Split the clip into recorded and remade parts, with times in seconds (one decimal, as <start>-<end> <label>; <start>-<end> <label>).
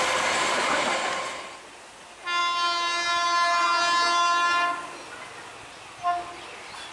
0.0-6.9 recorded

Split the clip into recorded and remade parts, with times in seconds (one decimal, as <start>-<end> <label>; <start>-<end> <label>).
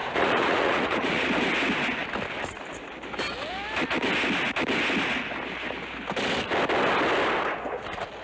0.0-1.4 remade; 1.4-8.2 recorded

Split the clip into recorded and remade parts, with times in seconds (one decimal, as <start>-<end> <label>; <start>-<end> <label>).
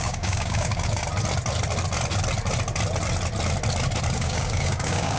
0.0-1.0 remade; 1.0-4.1 recorded; 4.1-5.2 remade